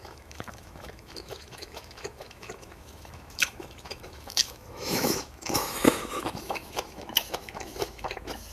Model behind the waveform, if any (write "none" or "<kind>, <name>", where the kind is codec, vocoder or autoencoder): autoencoder, DAC-VAE